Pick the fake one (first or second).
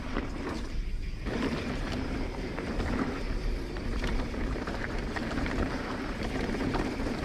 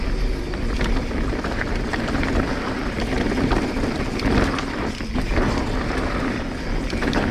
first